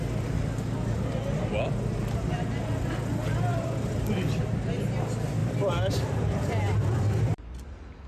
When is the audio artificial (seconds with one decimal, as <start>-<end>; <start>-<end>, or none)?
3.5-4.1; 5.4-7.0

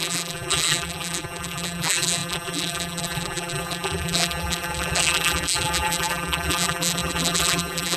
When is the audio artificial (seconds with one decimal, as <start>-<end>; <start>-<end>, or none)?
0.0-8.0

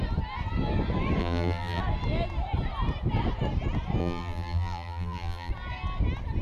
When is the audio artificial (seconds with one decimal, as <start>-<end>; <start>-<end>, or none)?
1.2-1.8; 4.0-5.5